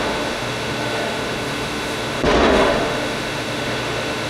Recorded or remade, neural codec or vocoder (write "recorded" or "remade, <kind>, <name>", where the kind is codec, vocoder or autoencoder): remade, autoencoder, DAC-VAE